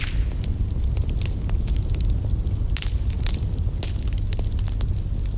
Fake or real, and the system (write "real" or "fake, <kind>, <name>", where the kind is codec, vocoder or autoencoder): real